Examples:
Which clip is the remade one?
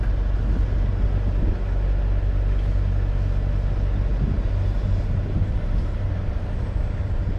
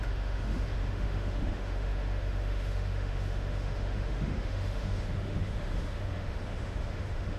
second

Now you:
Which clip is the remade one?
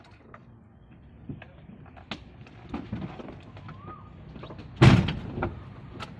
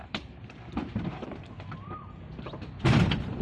second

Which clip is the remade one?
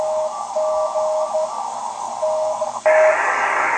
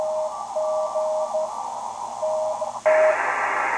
first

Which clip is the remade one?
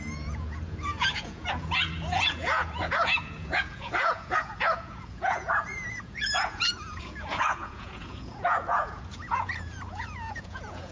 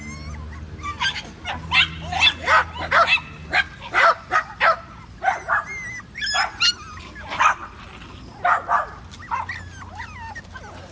first